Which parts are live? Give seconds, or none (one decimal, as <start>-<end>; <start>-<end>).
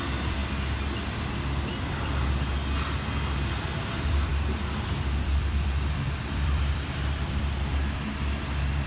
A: 0.4-3.5; 4.3-4.8